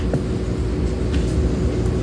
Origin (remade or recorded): recorded